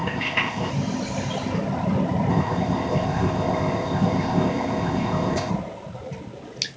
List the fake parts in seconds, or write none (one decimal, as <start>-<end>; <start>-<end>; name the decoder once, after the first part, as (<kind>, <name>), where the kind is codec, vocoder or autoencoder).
0.0-0.7 (codec, ZipCodec); 2.3-5.5